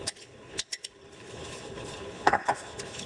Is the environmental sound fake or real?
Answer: fake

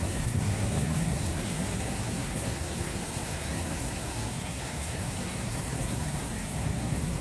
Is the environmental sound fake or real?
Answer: fake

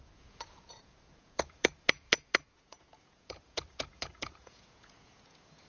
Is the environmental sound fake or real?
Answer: fake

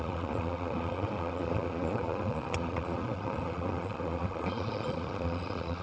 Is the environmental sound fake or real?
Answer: fake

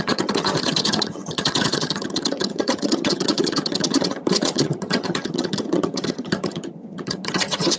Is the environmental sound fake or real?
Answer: fake